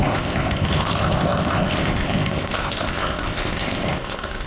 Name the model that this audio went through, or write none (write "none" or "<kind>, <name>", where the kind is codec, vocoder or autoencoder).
codec, ZipCodec